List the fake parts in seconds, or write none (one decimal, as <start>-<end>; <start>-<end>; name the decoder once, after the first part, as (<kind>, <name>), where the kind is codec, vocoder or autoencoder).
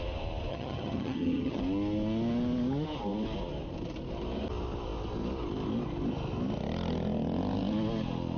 0.5-1.6 (vocoder, HiFi-GAN)